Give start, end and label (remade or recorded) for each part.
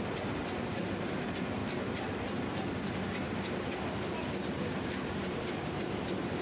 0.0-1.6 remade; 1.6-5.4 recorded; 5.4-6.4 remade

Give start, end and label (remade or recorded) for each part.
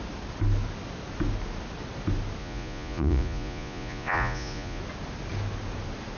0.0-2.4 recorded; 2.4-4.8 remade; 4.8-6.2 recorded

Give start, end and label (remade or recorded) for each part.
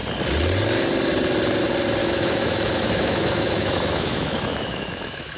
0.0-2.0 recorded; 2.0-5.4 remade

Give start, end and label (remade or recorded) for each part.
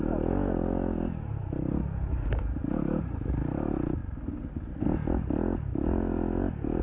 0.0-6.8 recorded